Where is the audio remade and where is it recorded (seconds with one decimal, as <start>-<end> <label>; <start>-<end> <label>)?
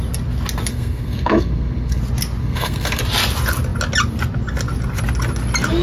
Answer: 0.0-0.7 recorded; 0.7-2.0 remade; 2.0-2.4 recorded; 2.4-3.0 remade; 3.0-5.8 recorded